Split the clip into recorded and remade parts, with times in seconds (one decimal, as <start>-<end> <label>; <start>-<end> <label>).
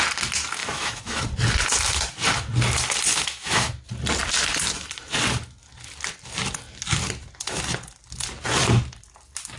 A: 0.0-0.6 recorded; 0.6-1.2 remade; 1.2-3.1 recorded; 3.1-3.7 remade; 3.7-9.6 recorded